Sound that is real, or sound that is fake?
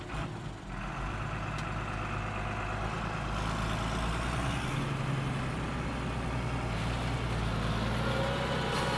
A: real